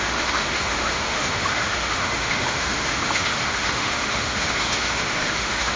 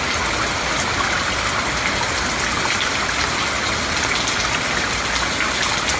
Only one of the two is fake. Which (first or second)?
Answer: first